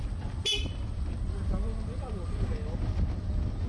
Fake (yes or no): no